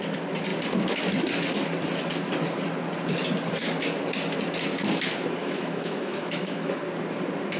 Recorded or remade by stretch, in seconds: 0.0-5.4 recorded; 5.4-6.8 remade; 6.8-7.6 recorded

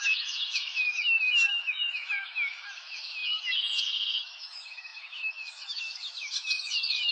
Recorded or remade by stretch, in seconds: 0.0-7.1 remade

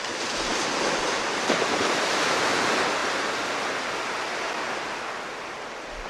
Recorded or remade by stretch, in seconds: 0.0-6.1 recorded

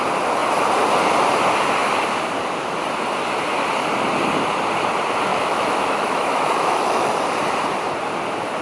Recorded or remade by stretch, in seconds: 0.0-5.3 recorded; 5.3-7.1 remade; 7.1-8.6 recorded

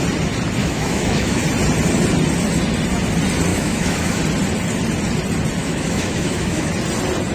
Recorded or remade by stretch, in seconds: 0.0-0.6 recorded; 0.6-1.4 remade; 1.4-3.5 recorded; 3.5-4.2 remade; 4.2-5.6 recorded; 5.6-6.7 remade; 6.7-7.3 recorded

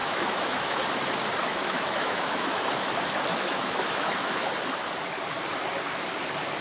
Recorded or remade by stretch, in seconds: 0.0-0.8 remade; 0.8-1.5 recorded; 1.5-2.9 remade; 2.9-3.3 recorded; 3.3-4.5 remade; 4.5-6.6 recorded

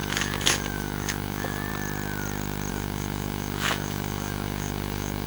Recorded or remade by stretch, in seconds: 0.0-1.7 remade; 1.7-2.7 recorded; 2.7-5.3 remade

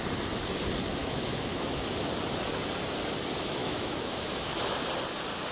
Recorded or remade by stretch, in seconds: 0.0-1.0 recorded; 1.0-2.0 remade; 2.0-3.6 recorded; 3.6-4.7 remade; 4.7-5.5 recorded